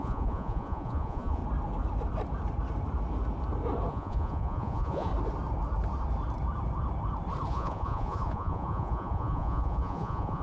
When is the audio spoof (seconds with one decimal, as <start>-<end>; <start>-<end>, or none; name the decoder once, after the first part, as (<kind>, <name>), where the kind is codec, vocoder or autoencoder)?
0.0-1.4 (vocoder, Vocos); 3.9-5.1; 7.5-10.4